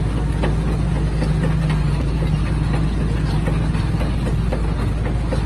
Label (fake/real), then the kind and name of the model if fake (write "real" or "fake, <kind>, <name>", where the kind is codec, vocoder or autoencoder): real